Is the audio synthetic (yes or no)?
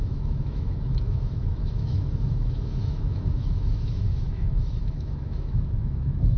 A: yes